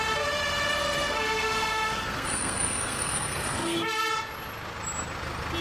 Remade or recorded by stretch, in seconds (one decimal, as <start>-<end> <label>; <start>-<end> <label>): 0.0-0.7 recorded; 0.7-4.1 remade; 4.1-5.6 recorded